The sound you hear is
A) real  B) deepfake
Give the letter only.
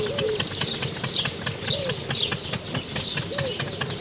A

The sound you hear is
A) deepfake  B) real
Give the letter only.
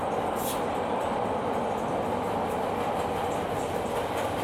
B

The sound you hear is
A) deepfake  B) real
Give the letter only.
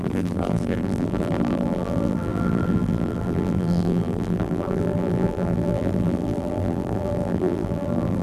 A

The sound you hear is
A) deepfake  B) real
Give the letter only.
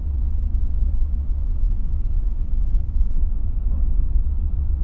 A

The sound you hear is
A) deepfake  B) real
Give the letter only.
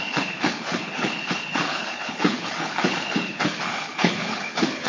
A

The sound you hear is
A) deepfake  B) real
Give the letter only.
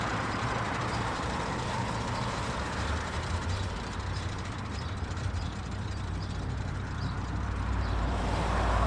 A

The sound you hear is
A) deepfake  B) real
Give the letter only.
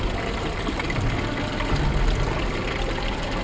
B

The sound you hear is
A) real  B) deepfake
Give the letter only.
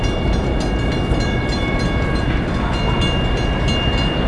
A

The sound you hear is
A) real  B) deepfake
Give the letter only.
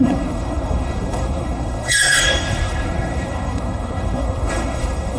B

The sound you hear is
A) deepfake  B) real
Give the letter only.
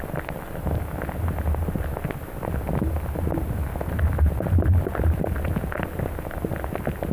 B